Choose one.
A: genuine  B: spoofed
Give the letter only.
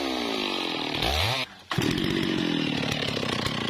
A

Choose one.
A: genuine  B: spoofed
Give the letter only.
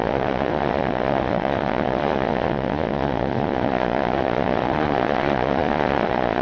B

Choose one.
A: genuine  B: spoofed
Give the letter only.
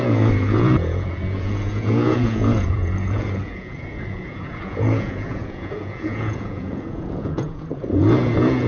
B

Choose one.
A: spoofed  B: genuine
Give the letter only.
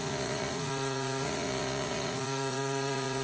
A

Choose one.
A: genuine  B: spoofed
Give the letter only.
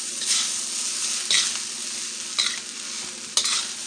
A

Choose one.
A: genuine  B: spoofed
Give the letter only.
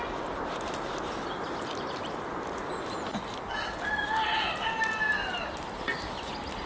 A